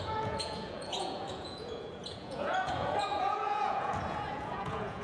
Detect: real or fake fake